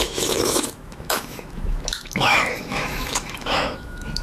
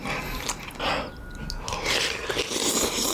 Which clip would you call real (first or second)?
second